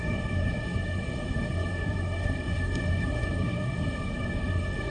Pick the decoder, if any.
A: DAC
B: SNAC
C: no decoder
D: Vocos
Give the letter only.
B